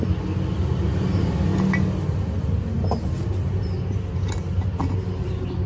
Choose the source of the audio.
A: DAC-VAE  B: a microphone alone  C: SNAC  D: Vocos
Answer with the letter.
B